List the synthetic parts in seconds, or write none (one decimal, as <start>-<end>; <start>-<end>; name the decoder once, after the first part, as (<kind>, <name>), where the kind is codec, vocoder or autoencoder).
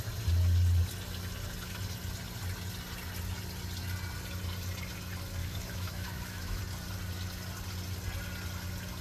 5.4-6.6 (autoencoder, DAC-VAE)